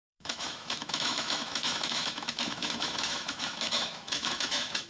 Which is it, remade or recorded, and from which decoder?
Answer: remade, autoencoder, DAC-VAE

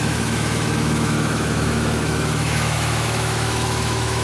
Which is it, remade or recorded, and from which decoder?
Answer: remade, autoencoder, DAC-VAE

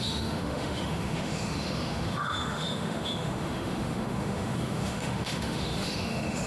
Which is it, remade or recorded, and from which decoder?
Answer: remade, autoencoder, DAC-VAE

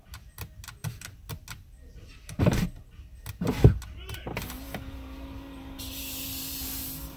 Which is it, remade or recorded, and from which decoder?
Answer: recorded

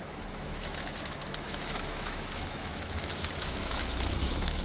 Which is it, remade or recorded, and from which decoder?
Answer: remade, autoencoder, DAC-VAE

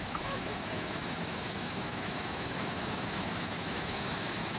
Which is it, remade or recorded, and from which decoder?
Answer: remade, autoencoder, DAC-VAE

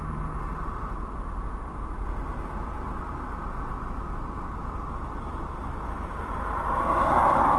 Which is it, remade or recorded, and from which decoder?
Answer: recorded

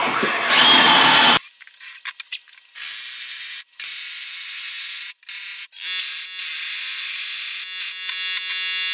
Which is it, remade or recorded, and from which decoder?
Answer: recorded